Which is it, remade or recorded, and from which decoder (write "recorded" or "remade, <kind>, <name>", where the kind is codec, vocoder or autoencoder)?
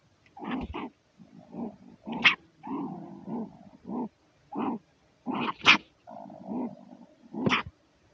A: recorded